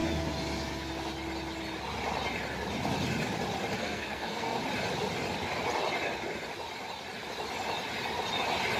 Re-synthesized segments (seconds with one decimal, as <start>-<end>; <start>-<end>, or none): 3.8-4.6